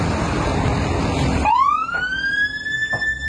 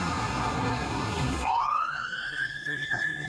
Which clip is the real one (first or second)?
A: first